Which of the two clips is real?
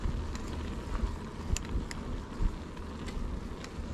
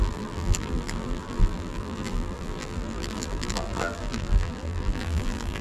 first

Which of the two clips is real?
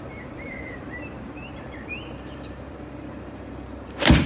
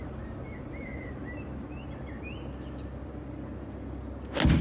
second